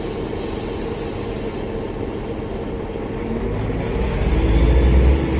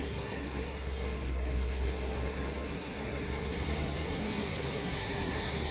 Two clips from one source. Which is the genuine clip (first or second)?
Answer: first